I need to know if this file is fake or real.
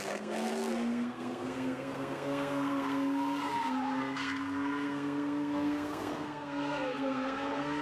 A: fake